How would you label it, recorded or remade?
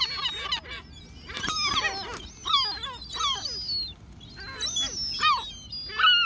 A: recorded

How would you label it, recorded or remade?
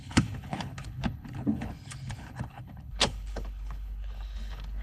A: remade